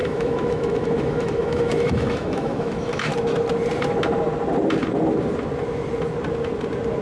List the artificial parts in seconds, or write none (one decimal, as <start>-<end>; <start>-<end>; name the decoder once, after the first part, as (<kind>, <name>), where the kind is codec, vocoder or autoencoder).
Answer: 0.0-3.1 (autoencoder, DAC-VAE)